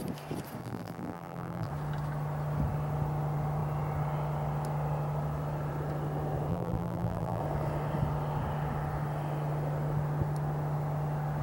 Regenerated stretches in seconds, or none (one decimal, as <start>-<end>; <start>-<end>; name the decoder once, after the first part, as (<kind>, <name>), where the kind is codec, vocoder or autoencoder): 0.6-1.7 (vocoder, BigVGAN v2); 6.5-7.4